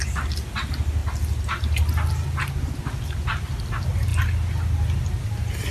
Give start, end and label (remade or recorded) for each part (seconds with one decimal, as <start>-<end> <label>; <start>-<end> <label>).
0.0-5.7 recorded